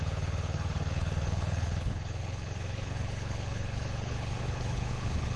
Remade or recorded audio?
remade